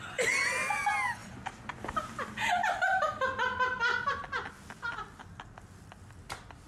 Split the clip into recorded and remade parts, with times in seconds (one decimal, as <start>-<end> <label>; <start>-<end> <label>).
0.0-6.7 recorded